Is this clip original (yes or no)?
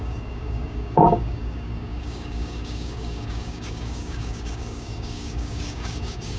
no